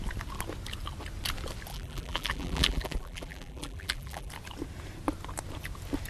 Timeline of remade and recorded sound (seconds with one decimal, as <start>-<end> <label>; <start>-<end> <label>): 0.0-1.7 recorded; 1.7-4.3 remade; 4.3-6.1 recorded